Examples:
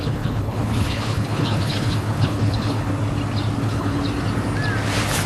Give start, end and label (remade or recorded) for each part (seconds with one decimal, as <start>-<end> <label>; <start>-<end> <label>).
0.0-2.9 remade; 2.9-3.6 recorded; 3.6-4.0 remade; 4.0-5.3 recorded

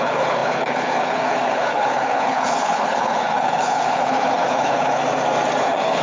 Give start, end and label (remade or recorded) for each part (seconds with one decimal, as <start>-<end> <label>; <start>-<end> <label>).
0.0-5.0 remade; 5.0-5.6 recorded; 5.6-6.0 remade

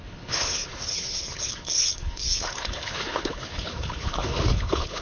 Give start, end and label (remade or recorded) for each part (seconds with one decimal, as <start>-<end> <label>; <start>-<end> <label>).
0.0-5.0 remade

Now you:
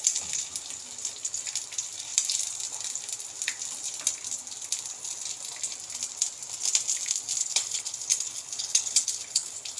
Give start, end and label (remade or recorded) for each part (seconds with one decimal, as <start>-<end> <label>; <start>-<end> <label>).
0.0-7.4 recorded; 7.4-9.8 remade

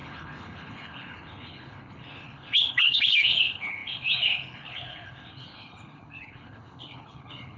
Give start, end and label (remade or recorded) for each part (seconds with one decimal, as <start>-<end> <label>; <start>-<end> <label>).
0.0-7.6 remade